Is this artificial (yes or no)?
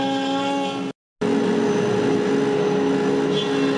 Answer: no